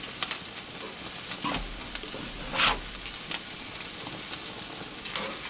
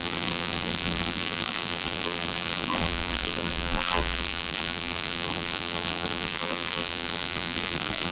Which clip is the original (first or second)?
first